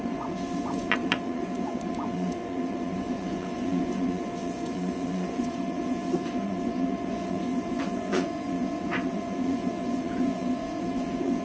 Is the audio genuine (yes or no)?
no